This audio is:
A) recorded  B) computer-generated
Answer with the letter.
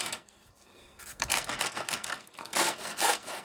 B